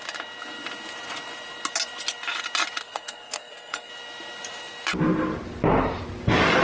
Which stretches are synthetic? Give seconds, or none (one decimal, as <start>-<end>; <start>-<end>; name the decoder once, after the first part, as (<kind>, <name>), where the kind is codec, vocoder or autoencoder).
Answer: 2.8-3.9 (codec, SNAC)